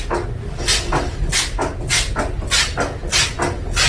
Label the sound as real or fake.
real